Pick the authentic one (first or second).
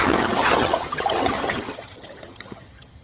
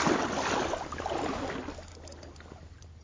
second